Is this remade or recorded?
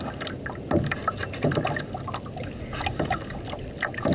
recorded